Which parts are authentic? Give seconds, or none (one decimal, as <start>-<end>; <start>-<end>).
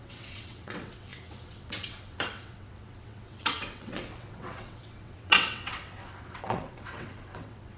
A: none